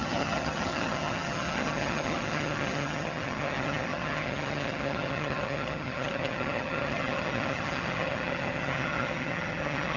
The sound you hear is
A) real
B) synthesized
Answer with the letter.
B